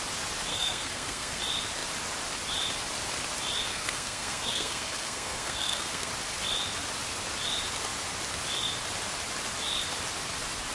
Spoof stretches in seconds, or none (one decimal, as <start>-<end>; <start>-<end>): 0.5-1.4; 3.7-6.1